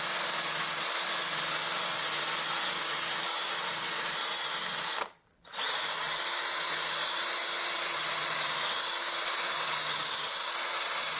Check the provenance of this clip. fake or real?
real